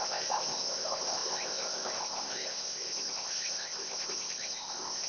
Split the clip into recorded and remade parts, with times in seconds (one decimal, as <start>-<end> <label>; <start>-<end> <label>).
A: 0.0-5.1 remade